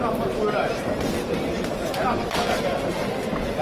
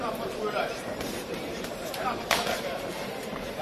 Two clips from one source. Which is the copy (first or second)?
second